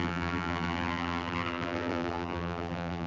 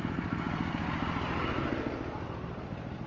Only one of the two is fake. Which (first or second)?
first